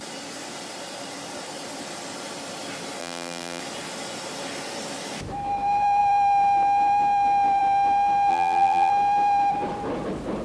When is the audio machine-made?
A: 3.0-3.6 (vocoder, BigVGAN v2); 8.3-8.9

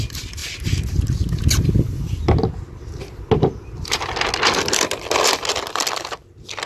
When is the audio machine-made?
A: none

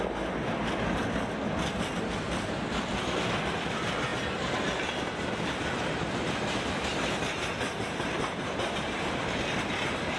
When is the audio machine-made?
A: 6.9-10.2 (vocoder, BigVGAN v2)